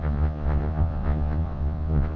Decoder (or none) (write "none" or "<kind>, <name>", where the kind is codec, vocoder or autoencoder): vocoder, Vocos